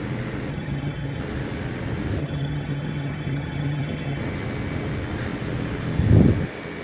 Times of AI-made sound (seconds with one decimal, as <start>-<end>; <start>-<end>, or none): 0.5-1.2; 2.2-4.2